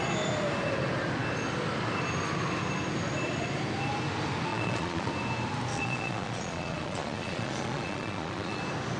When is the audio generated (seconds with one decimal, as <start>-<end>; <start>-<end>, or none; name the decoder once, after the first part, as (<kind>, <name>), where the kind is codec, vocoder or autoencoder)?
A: 4.5-5.1 (vocoder, Vocos); 5.7-8.6